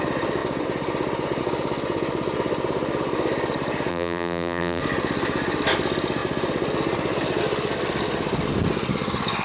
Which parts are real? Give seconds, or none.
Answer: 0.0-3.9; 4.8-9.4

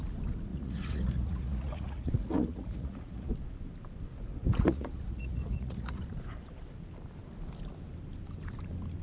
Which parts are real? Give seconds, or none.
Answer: 0.0-0.5; 3.3-4.4; 6.0-9.0

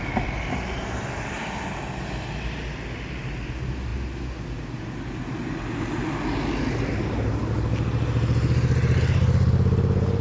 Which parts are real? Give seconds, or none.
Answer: 0.0-10.2

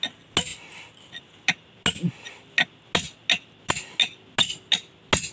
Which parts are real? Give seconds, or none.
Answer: 0.0-5.3

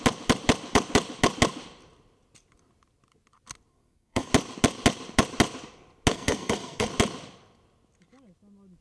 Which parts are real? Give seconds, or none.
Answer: 0.0-3.7; 4.3-6.1; 6.9-8.8

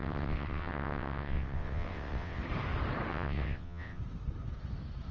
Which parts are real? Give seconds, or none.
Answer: 2.4-3.1; 4.0-5.1

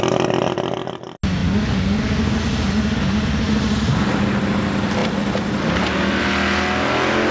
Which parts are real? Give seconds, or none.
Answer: 0.0-7.3